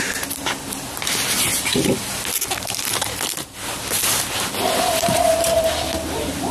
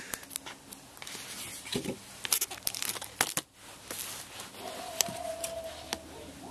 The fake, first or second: first